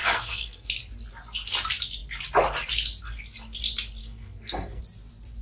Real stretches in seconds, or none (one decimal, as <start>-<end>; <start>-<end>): 0.7-4.0; 4.8-5.4